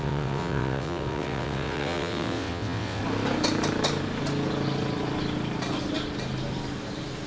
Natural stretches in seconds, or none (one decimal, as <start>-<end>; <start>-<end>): 3.0-7.3